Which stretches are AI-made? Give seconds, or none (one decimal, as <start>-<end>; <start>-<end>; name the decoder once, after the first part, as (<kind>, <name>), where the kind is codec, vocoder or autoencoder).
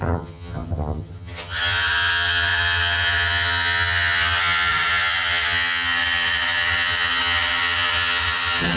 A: 0.0-8.8 (vocoder, HiFi-GAN)